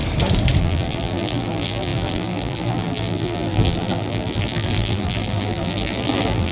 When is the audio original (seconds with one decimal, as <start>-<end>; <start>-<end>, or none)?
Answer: 0.0-0.6